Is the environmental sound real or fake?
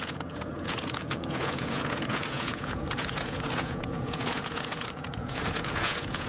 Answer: fake